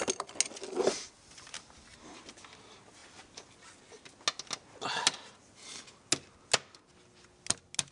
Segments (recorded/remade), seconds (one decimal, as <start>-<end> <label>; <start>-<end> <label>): 0.0-7.9 recorded